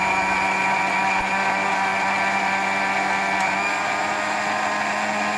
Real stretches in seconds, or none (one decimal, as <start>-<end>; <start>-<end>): 0.0-5.4